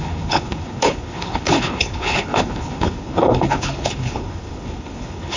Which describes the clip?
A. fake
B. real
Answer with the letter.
A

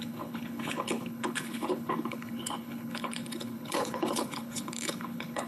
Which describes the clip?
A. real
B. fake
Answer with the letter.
B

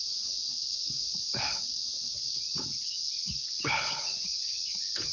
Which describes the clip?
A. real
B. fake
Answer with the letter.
B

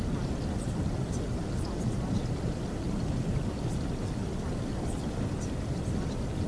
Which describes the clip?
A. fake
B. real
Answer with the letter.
B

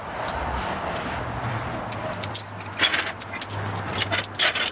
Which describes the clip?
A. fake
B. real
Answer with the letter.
B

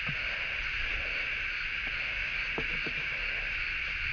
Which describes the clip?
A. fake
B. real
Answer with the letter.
B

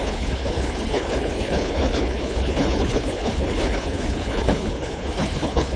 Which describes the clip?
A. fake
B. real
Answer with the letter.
A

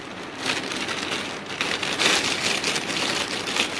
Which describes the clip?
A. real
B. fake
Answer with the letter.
A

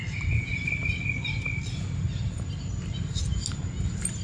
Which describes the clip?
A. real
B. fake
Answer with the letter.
A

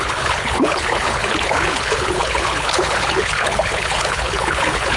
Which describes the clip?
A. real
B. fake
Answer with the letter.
B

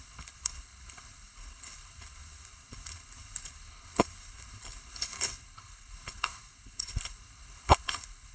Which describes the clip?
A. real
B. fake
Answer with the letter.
B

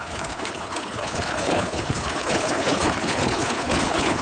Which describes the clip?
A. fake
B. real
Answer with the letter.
A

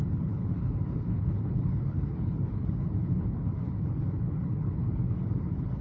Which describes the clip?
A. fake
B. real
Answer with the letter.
A